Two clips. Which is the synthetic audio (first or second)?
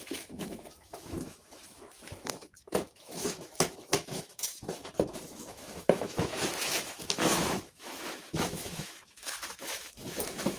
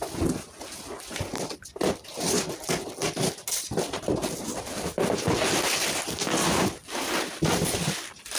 first